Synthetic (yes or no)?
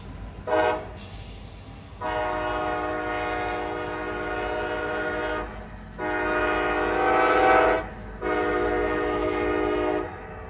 no